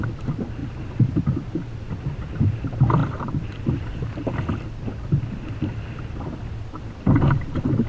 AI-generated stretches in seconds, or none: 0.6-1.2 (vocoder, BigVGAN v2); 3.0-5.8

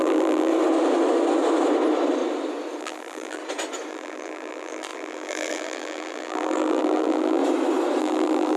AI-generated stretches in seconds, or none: 0.0-0.5 (vocoder, BigVGAN v2); 2.8-3.4; 3.9-7.4; 8.0-8.6

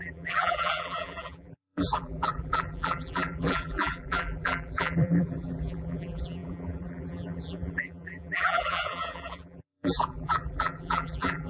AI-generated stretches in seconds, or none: 0.0-11.5 (vocoder, BigVGAN v2)

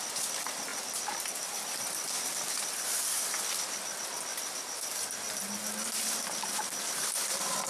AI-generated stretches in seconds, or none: none

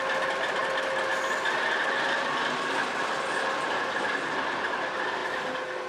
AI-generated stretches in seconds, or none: none

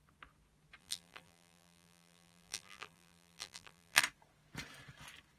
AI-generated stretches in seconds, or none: 0.8-4.0 (vocoder, BigVGAN v2)

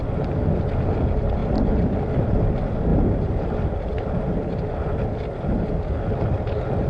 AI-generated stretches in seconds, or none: 2.9-5.4 (vocoder, BigVGAN v2)

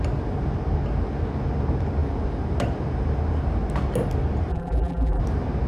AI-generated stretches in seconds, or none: 4.5-5.2 (vocoder, BigVGAN v2)